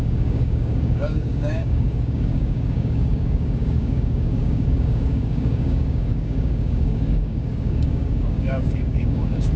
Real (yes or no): no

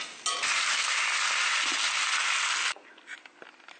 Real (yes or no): yes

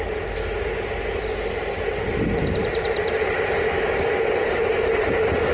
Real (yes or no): yes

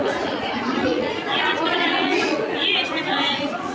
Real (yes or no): no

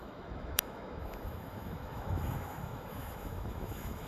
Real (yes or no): no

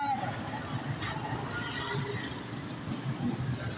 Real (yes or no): yes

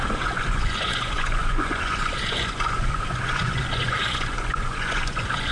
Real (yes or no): no